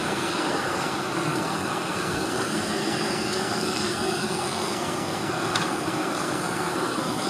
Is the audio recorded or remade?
remade